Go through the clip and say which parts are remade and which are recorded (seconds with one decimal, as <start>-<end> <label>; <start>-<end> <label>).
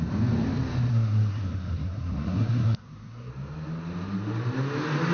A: 0.0-0.9 recorded; 0.9-3.3 remade; 3.3-5.1 recorded